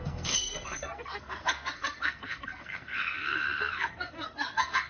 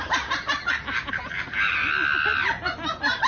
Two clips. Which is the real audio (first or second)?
second